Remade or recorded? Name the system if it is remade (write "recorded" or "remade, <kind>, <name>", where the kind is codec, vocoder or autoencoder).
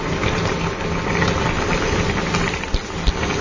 recorded